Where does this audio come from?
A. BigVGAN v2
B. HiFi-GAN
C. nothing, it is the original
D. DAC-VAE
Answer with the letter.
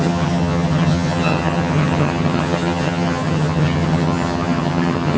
B